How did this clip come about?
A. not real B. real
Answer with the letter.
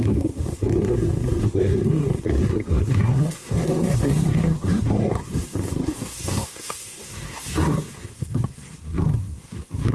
A